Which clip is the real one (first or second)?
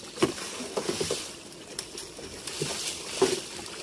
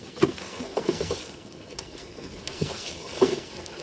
first